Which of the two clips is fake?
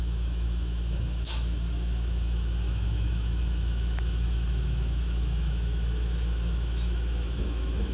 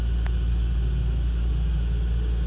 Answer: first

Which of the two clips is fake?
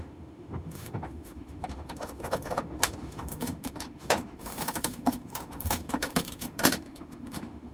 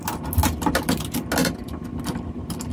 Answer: first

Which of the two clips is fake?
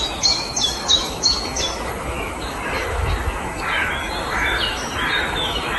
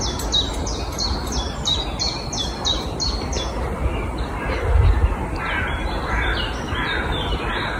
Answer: first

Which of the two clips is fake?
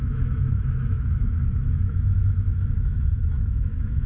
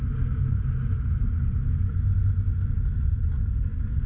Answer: first